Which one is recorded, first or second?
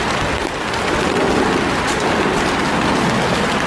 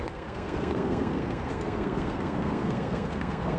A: first